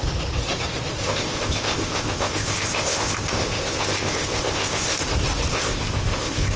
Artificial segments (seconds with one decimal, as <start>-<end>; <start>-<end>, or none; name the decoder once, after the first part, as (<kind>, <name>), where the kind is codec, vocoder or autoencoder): 1.0-5.0 (codec, ZipCodec); 5.5-6.6